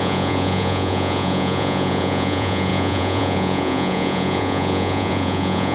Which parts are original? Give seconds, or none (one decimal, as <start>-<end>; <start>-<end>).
none

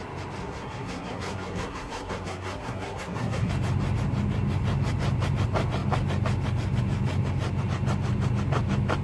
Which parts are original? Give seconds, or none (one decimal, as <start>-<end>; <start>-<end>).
0.0-0.4; 3.5-9.0

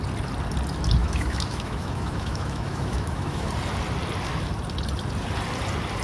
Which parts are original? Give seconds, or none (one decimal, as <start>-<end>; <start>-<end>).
0.0-1.0; 3.5-6.0